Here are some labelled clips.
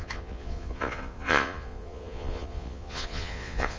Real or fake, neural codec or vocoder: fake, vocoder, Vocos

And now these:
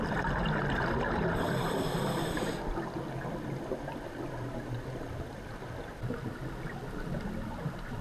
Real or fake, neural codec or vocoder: real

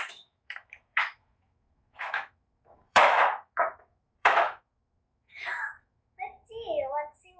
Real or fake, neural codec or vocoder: fake, autoencoder, DAC-VAE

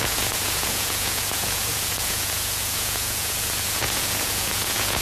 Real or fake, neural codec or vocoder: fake, vocoder, Vocos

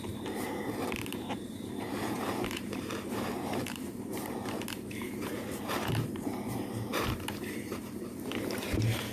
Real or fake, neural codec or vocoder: fake, vocoder, BigVGAN v2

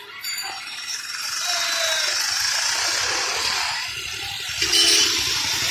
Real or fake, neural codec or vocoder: real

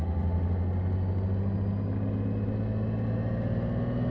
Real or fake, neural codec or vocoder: real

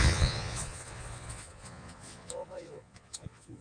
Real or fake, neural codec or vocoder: fake, vocoder, Vocos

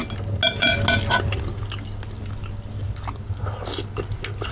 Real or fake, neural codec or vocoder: real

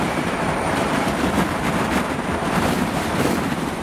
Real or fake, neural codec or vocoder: fake, vocoder, BigVGAN v2